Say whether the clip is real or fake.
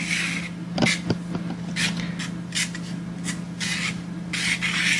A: real